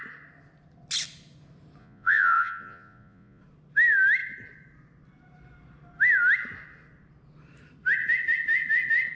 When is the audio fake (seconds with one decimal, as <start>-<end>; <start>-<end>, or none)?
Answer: 1.8-3.4